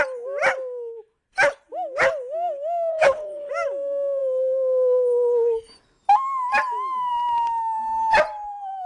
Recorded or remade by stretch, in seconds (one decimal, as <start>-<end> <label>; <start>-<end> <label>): 0.0-2.9 recorded; 2.9-3.5 remade; 3.5-8.9 recorded